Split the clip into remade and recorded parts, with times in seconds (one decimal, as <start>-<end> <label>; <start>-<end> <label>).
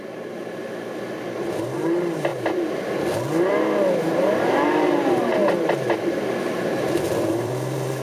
0.0-0.6 remade; 0.6-1.3 recorded; 1.3-2.3 remade; 2.3-4.0 recorded; 4.0-5.4 remade; 5.4-6.1 recorded; 6.1-8.0 remade